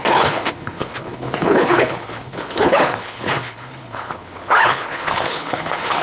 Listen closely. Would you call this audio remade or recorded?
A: remade